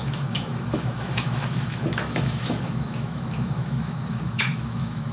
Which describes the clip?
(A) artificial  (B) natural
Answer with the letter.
A